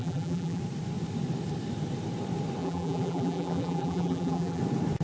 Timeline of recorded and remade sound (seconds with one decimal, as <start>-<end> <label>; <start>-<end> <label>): 0.0-0.6 remade; 0.6-2.6 recorded; 2.6-4.6 remade; 4.6-5.0 recorded

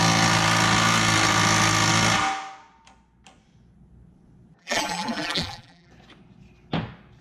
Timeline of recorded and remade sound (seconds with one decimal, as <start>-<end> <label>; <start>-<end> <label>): 0.0-4.6 recorded; 4.6-5.9 remade; 5.9-7.2 recorded